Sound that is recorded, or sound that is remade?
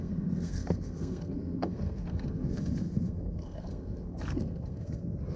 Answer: remade